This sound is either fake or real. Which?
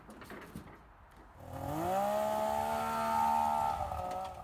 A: real